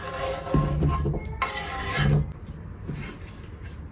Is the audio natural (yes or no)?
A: yes